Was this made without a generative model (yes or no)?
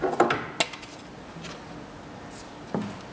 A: yes